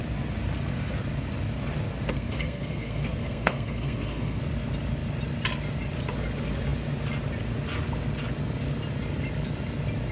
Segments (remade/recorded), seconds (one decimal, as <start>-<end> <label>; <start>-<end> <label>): 0.0-2.1 recorded; 2.1-4.4 remade; 4.4-10.1 recorded